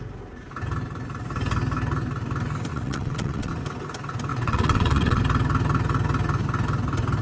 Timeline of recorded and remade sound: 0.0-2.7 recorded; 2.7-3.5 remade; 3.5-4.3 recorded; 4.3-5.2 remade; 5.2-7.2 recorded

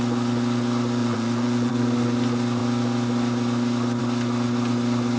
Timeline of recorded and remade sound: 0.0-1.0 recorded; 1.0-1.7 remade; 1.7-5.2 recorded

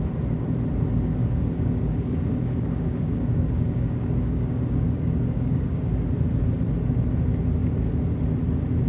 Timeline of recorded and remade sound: 0.0-1.2 recorded; 1.2-5.9 remade; 5.9-8.9 recorded